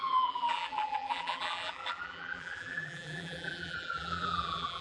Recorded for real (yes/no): no